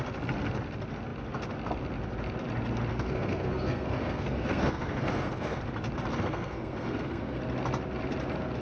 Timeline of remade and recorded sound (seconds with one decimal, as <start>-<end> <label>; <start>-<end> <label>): 0.0-2.9 recorded; 2.9-5.6 remade; 5.6-6.1 recorded; 6.1-7.4 remade; 7.4-8.6 recorded